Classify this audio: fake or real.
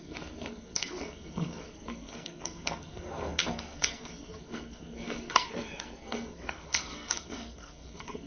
fake